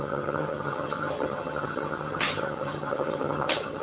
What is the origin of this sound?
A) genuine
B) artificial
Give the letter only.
B